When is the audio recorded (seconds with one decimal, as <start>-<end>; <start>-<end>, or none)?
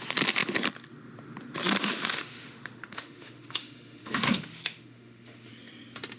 0.0-1.8; 5.5-6.2